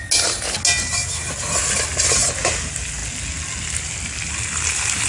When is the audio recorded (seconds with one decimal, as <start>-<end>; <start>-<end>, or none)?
0.0-5.1